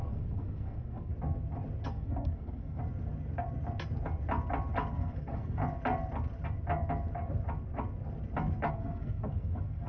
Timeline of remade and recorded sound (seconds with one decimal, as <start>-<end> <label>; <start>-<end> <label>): 0.0-1.1 remade; 1.1-1.9 recorded; 1.9-2.8 remade; 2.8-4.9 recorded; 4.9-5.6 remade; 5.6-8.7 recorded; 8.7-9.9 remade